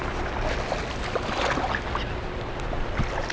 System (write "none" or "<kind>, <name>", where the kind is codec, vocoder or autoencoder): none